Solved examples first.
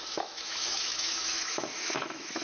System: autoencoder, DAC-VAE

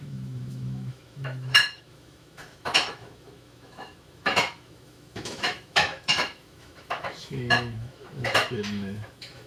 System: autoencoder, DAC-VAE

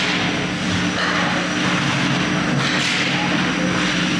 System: none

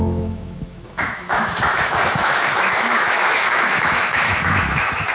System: autoencoder, DAC-VAE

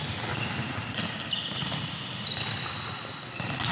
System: none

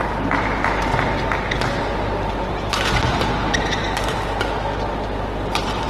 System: none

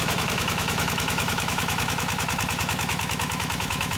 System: autoencoder, DAC-VAE